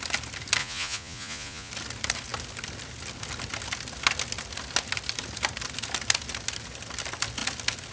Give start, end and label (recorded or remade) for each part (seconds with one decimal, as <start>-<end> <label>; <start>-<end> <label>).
0.0-0.6 recorded; 0.6-1.7 remade; 1.7-7.9 recorded